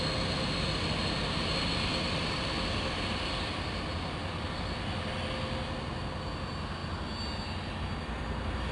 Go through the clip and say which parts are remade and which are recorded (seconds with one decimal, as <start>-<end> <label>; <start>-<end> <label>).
0.0-8.7 recorded